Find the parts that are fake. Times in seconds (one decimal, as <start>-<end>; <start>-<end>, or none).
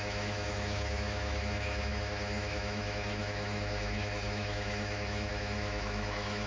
0.0-6.5